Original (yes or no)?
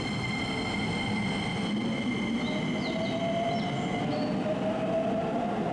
yes